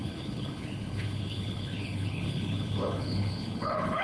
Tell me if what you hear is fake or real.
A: fake